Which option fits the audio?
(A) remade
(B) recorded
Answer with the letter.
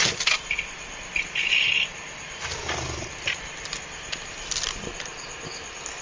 B